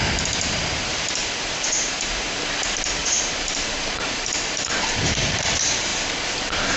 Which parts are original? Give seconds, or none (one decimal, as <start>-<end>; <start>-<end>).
0.0-1.2; 2.3-3.0; 5.5-6.8